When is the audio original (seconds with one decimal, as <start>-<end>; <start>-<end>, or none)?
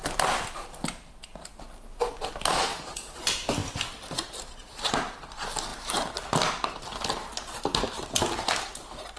0.0-2.7; 3.2-9.2